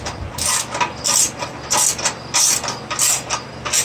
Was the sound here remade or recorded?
recorded